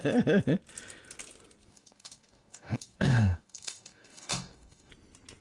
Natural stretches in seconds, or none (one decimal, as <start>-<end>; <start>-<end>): 0.0-1.7; 4.9-5.4